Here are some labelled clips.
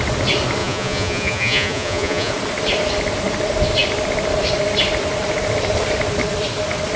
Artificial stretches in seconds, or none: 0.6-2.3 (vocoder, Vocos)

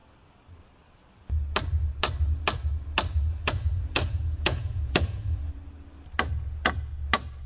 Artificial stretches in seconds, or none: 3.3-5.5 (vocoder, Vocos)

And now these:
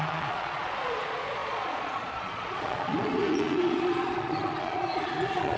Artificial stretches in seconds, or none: 0.0-5.6 (vocoder, Vocos)